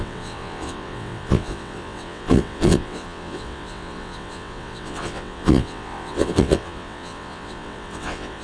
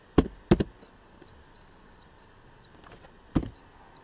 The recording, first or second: second